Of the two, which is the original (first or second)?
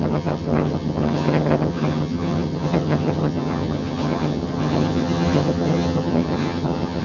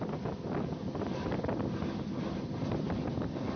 second